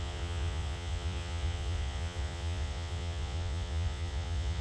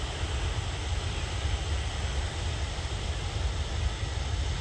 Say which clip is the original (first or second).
second